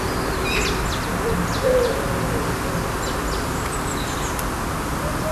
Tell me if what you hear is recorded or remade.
recorded